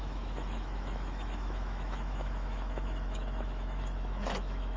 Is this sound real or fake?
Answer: fake